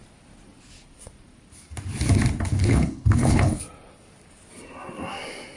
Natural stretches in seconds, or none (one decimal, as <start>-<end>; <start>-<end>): 0.0-2.5; 3.6-5.6